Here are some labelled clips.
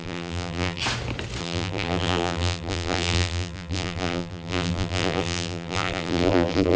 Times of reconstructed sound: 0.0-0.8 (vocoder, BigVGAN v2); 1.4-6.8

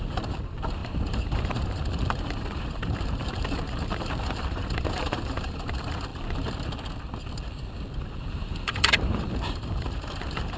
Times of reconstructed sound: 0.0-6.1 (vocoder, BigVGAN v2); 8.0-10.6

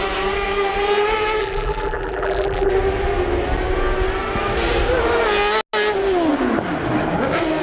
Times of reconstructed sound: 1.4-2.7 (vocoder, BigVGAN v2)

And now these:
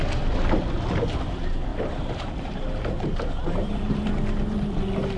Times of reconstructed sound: 1.7-4.8 (vocoder, BigVGAN v2)

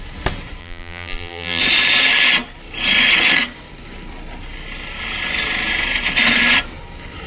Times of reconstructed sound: 0.6-1.6 (vocoder, BigVGAN v2)

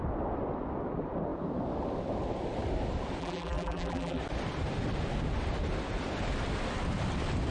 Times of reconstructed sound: 3.2-4.2 (vocoder, BigVGAN v2)

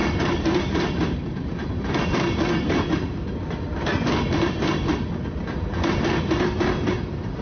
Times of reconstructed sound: 0.0-2.9 (vocoder, BigVGAN v2)